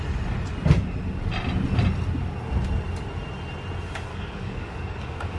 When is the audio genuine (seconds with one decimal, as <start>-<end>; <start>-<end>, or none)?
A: 0.0-4.1